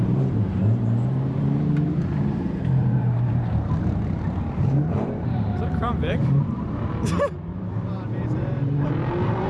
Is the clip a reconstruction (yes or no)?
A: yes